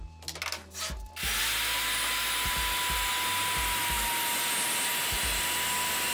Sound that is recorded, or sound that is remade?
recorded